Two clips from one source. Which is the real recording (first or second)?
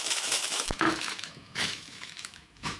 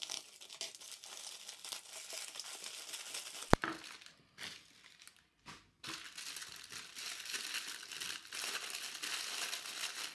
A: second